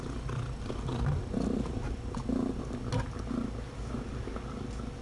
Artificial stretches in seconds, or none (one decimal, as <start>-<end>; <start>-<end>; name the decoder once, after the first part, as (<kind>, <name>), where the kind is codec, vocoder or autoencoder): none